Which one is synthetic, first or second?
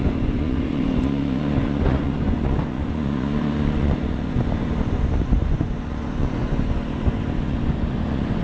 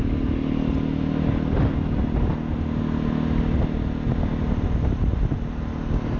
first